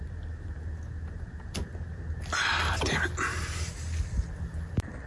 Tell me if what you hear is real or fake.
real